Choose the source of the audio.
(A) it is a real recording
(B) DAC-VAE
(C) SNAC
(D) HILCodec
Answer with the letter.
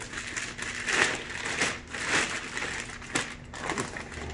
A